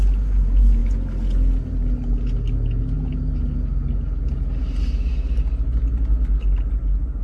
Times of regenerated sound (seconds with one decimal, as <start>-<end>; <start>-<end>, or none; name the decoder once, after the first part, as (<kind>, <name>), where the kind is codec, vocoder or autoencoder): none